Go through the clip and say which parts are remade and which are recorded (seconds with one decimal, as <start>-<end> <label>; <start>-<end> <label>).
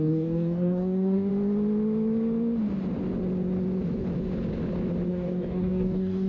0.0-1.3 remade; 1.3-5.1 recorded; 5.1-6.3 remade